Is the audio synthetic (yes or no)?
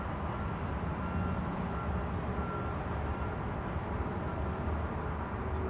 no